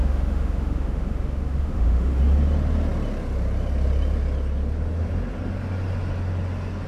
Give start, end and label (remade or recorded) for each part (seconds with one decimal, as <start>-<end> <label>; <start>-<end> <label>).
0.0-2.2 remade; 2.2-6.9 recorded